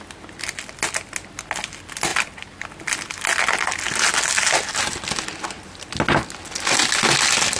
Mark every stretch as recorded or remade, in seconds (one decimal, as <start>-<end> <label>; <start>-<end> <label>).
0.0-7.6 recorded